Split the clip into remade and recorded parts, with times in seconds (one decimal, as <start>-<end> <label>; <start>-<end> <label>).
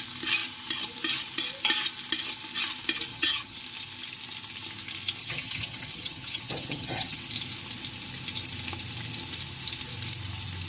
0.0-3.1 recorded; 3.1-3.6 remade; 3.6-5.2 recorded; 5.2-7.2 remade; 7.2-10.7 recorded